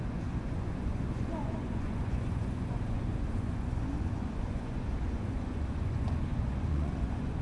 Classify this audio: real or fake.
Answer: fake